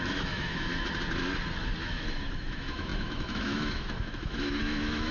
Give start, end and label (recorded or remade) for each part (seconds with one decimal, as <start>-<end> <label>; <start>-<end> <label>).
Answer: 0.0-0.7 remade; 0.7-1.8 recorded; 1.8-5.1 remade